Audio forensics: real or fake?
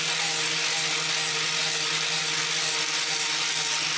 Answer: real